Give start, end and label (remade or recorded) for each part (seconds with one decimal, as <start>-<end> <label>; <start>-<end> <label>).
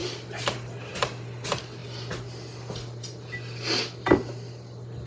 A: 0.0-5.1 recorded